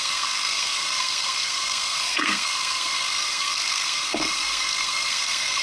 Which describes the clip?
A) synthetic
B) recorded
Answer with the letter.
A